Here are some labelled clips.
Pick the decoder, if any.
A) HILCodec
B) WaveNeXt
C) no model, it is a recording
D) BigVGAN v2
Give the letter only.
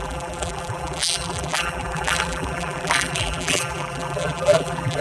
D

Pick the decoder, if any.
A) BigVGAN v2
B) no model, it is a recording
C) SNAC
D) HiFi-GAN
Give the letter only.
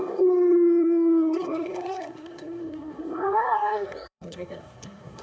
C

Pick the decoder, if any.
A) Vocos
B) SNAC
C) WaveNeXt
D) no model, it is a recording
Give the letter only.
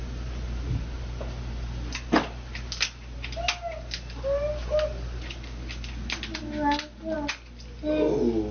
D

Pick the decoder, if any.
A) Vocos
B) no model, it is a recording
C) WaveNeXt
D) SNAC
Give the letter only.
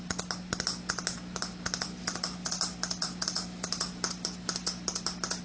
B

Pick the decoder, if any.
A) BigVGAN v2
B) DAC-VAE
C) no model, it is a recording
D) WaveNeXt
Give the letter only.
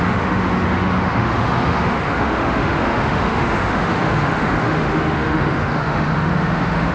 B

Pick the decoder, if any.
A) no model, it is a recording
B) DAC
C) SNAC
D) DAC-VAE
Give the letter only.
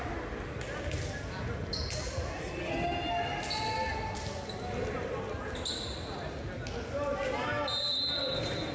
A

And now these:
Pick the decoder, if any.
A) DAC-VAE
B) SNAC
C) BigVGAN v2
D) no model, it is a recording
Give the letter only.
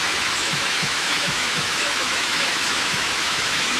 A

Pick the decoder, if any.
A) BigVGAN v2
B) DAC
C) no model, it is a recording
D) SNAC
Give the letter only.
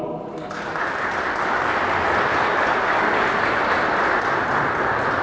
C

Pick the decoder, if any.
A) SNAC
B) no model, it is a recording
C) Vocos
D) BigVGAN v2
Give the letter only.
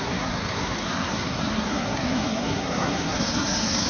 A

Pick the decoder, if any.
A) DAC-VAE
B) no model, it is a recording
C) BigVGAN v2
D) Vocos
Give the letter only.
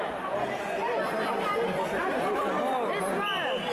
B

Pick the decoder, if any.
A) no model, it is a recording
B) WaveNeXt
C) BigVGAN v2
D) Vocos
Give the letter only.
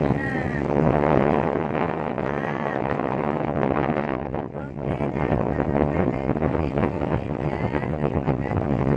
B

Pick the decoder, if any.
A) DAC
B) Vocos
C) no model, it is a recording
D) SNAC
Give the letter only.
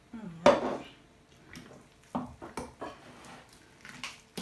C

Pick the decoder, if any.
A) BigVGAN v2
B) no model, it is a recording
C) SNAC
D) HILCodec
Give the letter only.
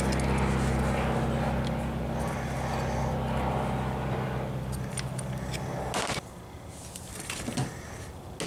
B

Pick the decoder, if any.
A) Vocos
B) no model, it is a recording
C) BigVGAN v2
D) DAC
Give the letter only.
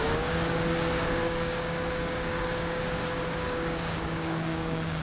D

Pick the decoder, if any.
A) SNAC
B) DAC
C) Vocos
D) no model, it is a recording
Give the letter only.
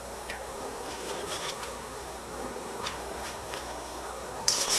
A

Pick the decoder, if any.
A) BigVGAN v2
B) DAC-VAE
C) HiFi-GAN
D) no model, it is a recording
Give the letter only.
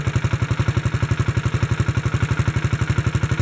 D